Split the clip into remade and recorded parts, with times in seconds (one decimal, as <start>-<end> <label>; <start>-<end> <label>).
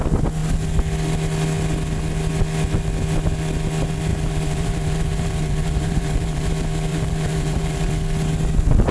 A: 0.0-4.1 recorded; 4.1-6.5 remade; 6.5-6.9 recorded; 6.9-7.9 remade; 7.9-8.9 recorded